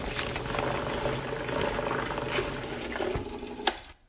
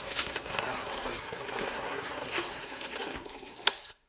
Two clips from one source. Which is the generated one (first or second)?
second